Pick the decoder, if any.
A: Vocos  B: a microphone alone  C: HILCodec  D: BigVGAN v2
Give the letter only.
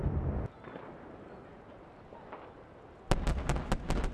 B